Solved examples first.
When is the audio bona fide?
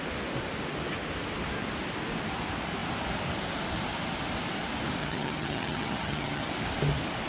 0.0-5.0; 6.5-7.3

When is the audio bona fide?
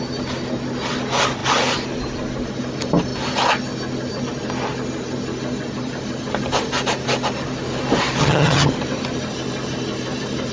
0.0-8.2; 8.7-10.5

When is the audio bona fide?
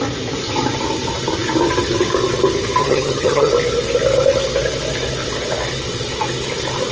0.0-2.8; 3.5-6.9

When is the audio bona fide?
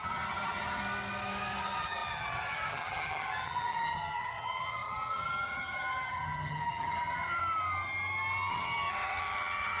0.8-1.6; 7.4-8.5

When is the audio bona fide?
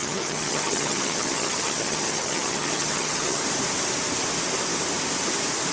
3.4-5.7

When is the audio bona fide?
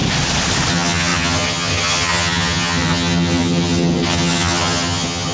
0.0-0.7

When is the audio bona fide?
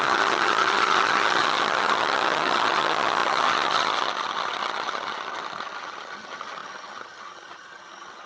none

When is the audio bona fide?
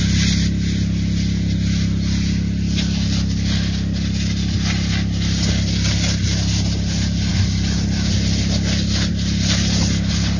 0.0-10.4